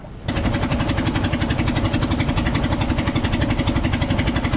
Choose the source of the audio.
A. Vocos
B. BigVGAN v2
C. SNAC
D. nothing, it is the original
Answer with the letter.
D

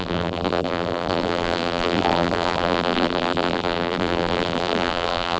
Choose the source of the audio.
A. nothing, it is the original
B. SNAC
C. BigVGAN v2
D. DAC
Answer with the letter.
C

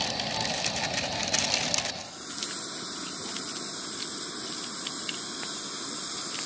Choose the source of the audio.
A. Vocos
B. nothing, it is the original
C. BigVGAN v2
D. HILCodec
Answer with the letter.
B